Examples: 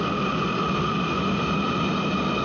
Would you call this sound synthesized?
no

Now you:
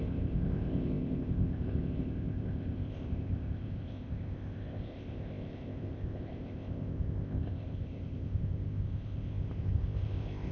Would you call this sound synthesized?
yes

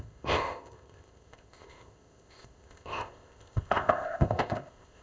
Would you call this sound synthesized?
yes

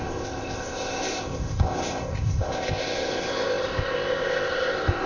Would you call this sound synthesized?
yes